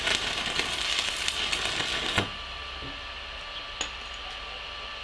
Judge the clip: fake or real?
real